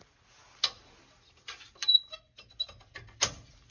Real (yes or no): yes